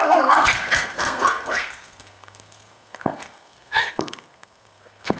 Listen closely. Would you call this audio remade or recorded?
remade